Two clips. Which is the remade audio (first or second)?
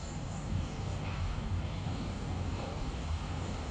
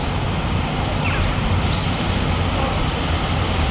first